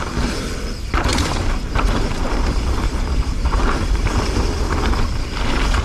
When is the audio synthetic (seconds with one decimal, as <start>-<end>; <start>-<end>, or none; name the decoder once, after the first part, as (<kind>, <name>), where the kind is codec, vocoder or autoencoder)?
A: 1.1-4.4 (vocoder, BigVGAN v2)